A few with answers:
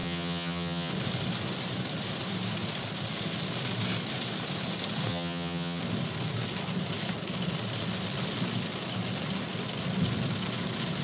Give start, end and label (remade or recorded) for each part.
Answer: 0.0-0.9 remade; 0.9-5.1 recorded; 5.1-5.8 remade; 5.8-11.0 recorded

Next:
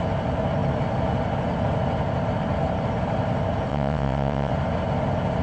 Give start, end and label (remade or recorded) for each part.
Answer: 0.0-3.7 recorded; 3.7-4.5 remade; 4.5-5.4 recorded

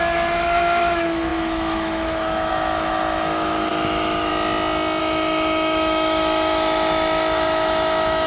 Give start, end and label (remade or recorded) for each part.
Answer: 0.0-4.3 remade; 4.3-5.0 recorded; 5.0-8.3 remade

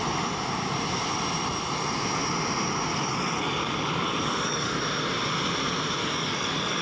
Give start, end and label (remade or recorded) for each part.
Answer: 0.0-2.9 recorded; 2.9-4.8 remade; 4.8-6.0 recorded; 6.0-6.8 remade